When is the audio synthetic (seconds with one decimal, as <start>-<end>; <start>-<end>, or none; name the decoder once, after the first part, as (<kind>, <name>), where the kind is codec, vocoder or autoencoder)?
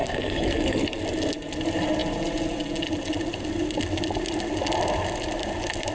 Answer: 0.0-1.0 (codec, SNAC)